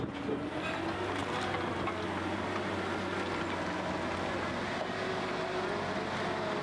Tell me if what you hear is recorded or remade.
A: recorded